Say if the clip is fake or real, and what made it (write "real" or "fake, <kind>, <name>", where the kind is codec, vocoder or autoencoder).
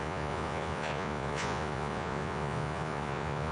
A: fake, vocoder, Vocos